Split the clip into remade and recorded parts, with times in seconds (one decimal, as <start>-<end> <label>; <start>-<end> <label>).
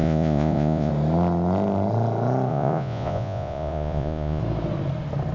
0.0-0.9 remade; 0.9-2.5 recorded; 2.5-4.4 remade; 4.4-5.3 recorded